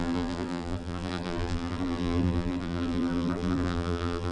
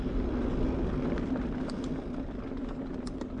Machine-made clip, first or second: first